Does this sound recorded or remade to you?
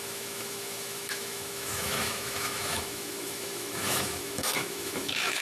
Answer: remade